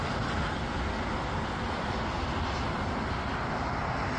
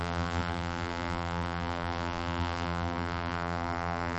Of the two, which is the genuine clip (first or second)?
first